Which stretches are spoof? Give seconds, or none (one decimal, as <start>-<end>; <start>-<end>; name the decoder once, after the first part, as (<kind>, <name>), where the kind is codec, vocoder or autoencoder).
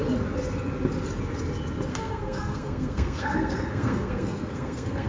1.9-5.1 (codec, SNAC)